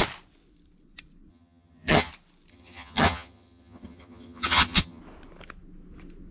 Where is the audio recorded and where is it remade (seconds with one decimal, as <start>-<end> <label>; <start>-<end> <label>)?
0.0-1.3 recorded; 1.3-2.1 remade; 2.1-2.5 recorded; 2.5-5.0 remade; 5.0-6.3 recorded